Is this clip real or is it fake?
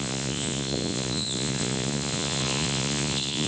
fake